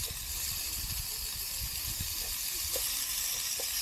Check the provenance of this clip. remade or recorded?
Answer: remade